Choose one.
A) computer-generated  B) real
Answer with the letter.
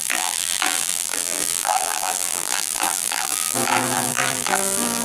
A